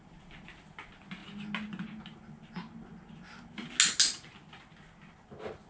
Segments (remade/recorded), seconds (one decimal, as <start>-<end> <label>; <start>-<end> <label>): 0.0-5.7 recorded